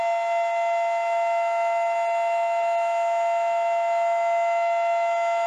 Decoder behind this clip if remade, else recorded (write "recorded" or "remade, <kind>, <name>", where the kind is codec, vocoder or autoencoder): recorded